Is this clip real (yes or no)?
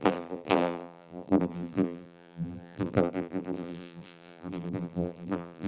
no